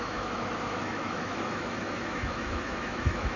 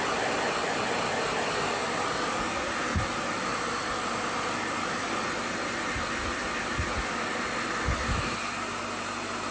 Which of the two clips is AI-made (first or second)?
first